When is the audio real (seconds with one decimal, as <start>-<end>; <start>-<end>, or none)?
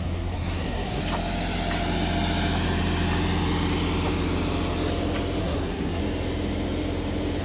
1.0-5.4; 6.0-7.4